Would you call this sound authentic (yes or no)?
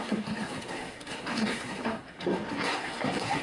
no